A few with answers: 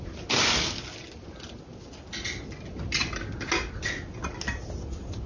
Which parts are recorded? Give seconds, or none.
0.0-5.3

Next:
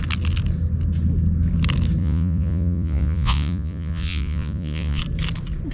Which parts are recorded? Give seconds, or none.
0.0-2.0; 5.0-5.7